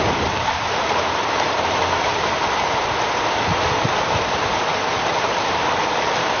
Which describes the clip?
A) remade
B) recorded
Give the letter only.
A